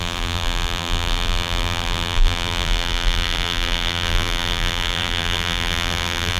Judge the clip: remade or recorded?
remade